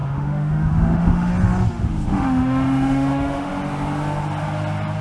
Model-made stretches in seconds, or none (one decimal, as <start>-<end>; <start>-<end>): 0.0-1.3; 1.8-3.5